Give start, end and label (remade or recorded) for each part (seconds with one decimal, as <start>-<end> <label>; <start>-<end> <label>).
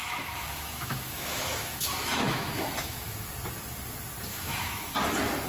0.0-3.3 remade; 3.3-4.3 recorded; 4.3-4.9 remade; 4.9-5.5 recorded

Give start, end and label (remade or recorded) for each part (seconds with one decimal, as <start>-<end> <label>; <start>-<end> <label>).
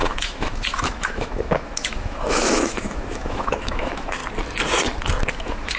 0.0-4.2 remade; 4.2-5.3 recorded; 5.3-5.8 remade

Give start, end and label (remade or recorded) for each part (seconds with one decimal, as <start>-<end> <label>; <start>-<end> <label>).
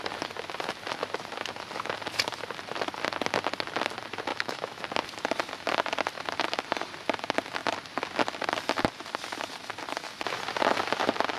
0.0-4.3 recorded; 4.3-4.8 remade; 4.8-11.4 recorded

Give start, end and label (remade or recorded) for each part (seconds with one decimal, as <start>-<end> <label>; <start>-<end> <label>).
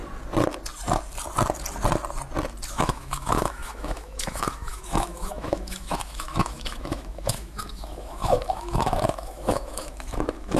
0.0-2.7 recorded; 2.7-10.6 remade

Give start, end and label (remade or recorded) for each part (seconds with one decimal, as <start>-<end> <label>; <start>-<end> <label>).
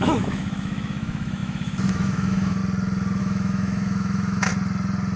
0.0-2.6 remade; 2.6-3.2 recorded; 3.2-4.5 remade; 4.5-5.2 recorded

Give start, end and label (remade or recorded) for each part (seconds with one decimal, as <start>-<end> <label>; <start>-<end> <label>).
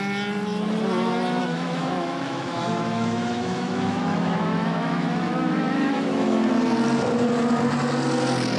0.0-1.4 recorded; 1.4-6.5 remade; 6.5-8.6 recorded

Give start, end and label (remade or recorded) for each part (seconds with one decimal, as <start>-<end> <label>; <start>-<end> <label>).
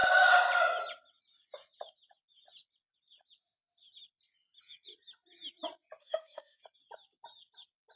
0.0-6.0 recorded; 6.0-6.6 remade; 6.6-8.0 recorded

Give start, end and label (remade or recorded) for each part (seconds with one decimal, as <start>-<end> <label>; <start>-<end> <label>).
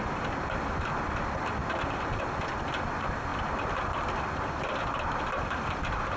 0.0-6.2 recorded